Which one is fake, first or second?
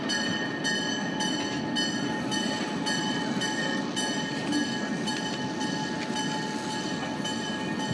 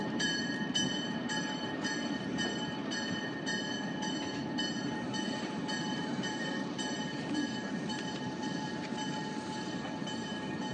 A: second